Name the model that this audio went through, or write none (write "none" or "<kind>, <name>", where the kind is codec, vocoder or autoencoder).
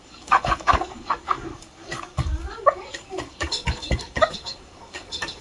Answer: codec, DAC